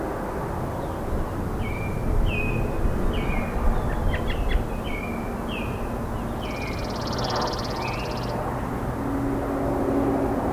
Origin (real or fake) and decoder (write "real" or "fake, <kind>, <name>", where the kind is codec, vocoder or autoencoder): real